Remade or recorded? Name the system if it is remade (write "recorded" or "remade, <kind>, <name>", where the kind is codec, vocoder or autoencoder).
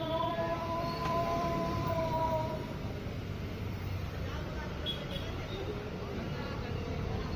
remade, vocoder, BigVGAN v2